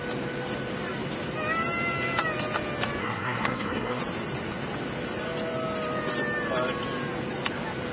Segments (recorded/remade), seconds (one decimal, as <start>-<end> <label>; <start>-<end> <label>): 0.0-3.0 recorded; 3.0-4.0 remade; 4.0-7.9 recorded